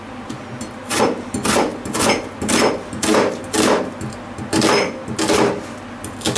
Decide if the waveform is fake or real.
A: real